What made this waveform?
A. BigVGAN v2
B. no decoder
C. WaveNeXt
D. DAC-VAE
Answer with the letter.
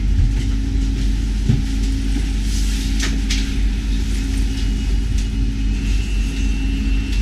B